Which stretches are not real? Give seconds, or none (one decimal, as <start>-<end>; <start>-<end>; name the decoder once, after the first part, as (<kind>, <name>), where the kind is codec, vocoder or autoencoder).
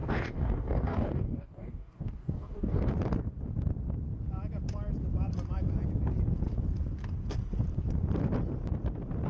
0.0-2.9 (codec, DAC)